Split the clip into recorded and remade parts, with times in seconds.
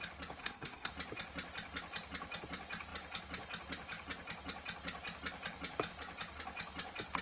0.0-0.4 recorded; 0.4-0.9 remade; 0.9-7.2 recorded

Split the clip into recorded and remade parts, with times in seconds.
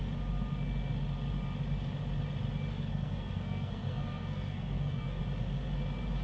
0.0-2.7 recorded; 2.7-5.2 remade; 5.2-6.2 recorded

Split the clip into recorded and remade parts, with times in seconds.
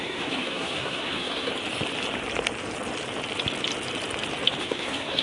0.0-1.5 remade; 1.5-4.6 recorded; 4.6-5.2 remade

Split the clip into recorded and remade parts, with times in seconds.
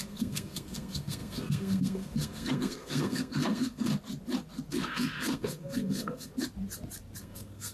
0.0-3.9 remade; 3.9-4.7 recorded; 4.7-6.3 remade; 6.3-7.2 recorded; 7.2-7.7 remade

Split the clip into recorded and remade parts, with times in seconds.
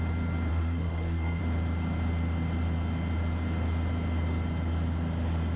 0.0-0.5 recorded; 0.5-1.4 remade; 1.4-5.6 recorded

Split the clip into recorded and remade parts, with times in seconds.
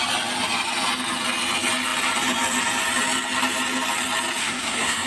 0.0-4.4 recorded; 4.4-5.1 remade